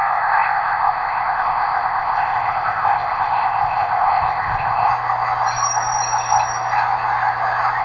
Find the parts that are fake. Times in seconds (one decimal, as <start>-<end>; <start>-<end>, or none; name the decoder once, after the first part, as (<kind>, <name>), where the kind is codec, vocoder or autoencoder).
0.0-4.9 (codec, ZipCodec)